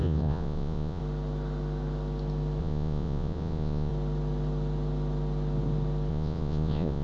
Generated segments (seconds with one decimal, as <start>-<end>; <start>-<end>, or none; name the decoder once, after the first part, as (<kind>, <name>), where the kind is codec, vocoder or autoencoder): 0.0-1.0 (vocoder, Vocos); 2.6-3.9; 6.1-7.0